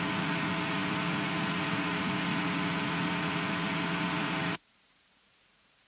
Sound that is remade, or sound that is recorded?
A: remade